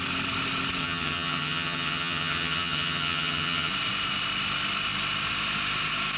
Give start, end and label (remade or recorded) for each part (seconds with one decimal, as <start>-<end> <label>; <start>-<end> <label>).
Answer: 0.0-0.8 recorded; 0.8-3.7 remade; 3.7-6.2 recorded